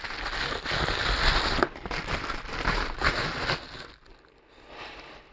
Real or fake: real